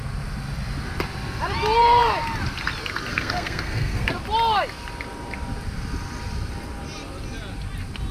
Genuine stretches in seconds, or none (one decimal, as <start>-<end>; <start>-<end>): 0.0-3.1; 4.1-8.1